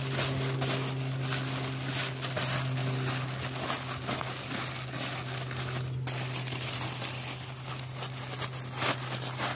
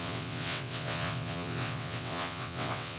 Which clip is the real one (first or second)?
first